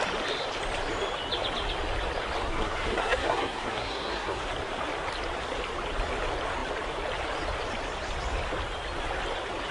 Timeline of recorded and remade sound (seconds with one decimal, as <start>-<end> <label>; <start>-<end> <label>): 0.0-2.5 recorded; 2.5-4.4 remade; 4.4-9.7 recorded